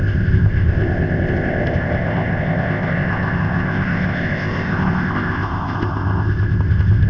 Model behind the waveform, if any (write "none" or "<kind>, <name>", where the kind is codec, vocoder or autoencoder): codec, ZipCodec